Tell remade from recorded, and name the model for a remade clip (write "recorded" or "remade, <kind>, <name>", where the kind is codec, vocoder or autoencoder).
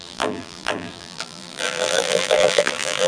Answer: remade, vocoder, BigVGAN v2